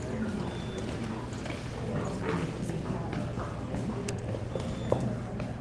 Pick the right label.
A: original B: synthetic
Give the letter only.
A